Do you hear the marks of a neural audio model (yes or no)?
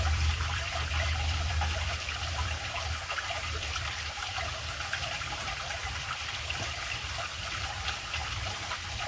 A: yes